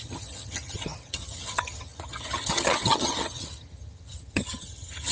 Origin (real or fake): fake